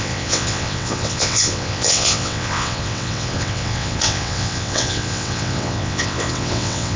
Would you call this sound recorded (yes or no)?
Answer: no